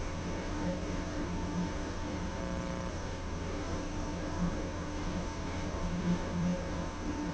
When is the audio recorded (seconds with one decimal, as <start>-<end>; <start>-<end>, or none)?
2.4-2.9